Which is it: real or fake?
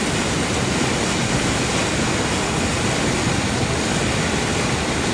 real